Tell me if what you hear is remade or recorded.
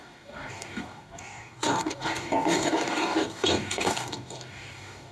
remade